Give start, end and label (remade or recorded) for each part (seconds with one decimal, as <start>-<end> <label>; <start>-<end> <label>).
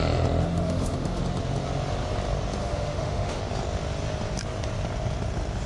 0.0-0.4 recorded; 0.4-1.2 remade; 1.2-2.6 recorded; 2.6-3.4 remade; 3.4-5.7 recorded